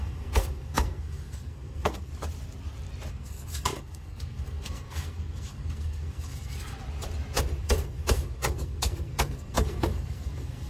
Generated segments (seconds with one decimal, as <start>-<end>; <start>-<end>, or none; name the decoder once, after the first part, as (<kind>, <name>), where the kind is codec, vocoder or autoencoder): 0.0-2.1 (codec, SNAC); 3.1-6.8; 7.6-10.7